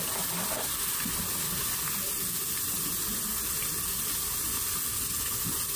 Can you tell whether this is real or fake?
real